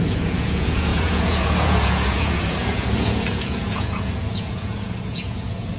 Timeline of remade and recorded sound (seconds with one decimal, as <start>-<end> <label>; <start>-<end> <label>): 0.0-5.8 remade